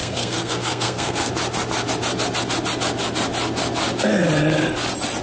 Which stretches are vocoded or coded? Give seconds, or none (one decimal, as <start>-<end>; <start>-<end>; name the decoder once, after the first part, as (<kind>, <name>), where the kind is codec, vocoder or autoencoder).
0.0-1.3 (codec, SNAC)